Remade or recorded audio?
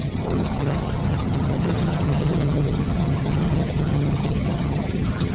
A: remade